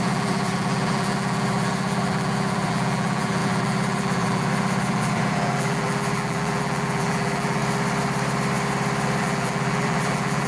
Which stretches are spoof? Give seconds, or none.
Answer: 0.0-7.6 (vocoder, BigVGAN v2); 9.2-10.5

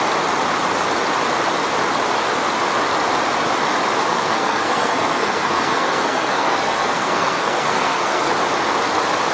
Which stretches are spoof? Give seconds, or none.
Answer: 4.1-8.3 (codec, SNAC)

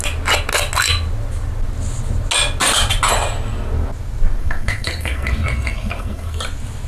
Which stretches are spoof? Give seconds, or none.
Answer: 4.4-6.4 (codec, SNAC)

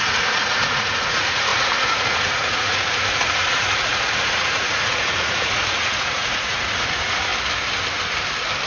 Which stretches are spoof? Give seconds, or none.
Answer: 0.0-7.3 (vocoder, Vocos)

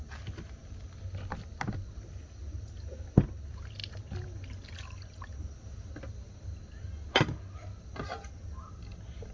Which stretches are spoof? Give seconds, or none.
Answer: none